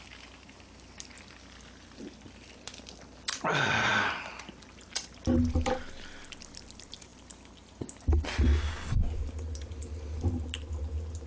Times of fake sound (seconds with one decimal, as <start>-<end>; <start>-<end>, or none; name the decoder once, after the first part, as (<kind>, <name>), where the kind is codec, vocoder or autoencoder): none